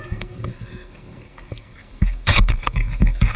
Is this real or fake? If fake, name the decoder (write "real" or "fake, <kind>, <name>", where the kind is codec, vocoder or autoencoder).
fake, codec, SNAC